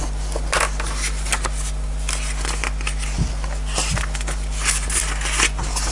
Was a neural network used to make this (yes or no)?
no